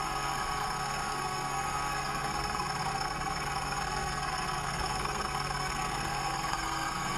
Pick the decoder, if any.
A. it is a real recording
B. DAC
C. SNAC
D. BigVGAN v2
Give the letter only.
C